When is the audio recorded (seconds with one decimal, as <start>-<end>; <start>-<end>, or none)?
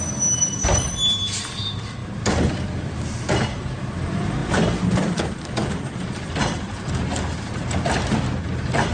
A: 0.0-8.9